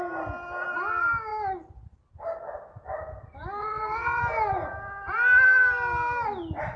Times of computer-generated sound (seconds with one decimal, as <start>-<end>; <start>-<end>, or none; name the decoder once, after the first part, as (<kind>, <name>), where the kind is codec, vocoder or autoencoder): 3.6-4.2 (vocoder, WaveNeXt)